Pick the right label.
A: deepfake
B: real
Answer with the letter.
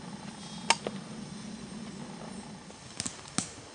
B